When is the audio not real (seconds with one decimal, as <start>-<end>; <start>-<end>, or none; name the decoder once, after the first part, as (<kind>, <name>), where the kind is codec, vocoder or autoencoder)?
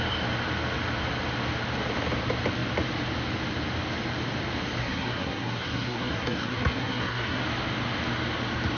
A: 4.8-7.4 (codec, SNAC)